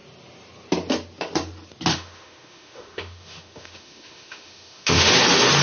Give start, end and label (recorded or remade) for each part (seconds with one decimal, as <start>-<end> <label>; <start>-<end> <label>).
0.0-1.9 recorded; 1.9-5.1 remade; 5.1-5.6 recorded